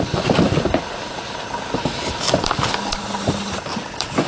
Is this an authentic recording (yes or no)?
yes